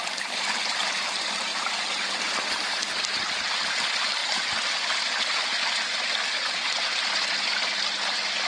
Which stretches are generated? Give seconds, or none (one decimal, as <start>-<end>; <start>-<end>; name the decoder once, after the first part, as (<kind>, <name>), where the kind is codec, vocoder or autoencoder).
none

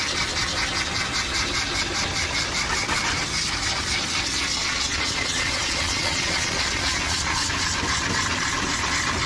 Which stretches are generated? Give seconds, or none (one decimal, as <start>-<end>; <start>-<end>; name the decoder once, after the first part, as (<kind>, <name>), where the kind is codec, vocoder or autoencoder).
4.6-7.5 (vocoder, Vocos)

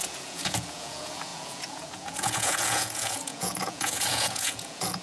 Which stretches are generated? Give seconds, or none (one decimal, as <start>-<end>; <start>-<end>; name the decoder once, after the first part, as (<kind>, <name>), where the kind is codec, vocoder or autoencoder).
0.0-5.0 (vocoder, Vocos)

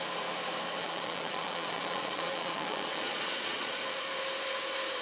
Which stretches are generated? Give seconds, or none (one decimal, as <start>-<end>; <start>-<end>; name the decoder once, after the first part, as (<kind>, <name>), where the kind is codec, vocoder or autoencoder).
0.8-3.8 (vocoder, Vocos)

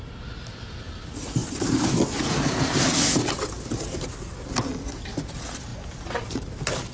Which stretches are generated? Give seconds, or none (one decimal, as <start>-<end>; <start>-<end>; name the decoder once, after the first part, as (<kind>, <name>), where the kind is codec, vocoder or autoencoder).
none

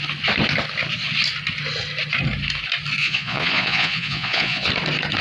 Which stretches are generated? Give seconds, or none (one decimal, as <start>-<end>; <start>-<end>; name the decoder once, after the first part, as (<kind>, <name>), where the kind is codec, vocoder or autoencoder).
3.0-4.7 (vocoder, Vocos)

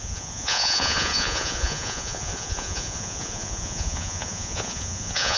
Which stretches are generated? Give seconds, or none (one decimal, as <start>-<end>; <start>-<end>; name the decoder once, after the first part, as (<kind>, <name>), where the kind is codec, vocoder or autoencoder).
0.0-5.4 (vocoder, Vocos)

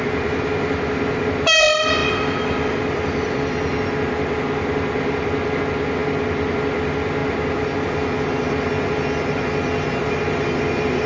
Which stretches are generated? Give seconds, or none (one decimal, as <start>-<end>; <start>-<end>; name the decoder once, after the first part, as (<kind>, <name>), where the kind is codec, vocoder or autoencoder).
none